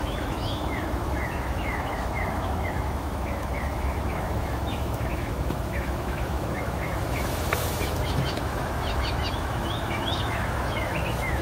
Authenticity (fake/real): fake